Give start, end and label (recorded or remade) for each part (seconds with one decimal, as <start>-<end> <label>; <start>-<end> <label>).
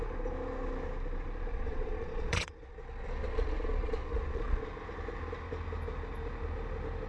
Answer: 0.0-1.5 recorded; 1.5-4.6 remade; 4.6-7.1 recorded